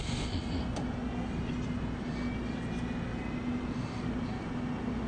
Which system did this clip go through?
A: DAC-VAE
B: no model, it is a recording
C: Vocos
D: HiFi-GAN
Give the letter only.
B